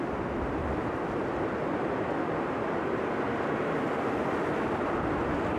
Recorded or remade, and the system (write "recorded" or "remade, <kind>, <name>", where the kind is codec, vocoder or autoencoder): recorded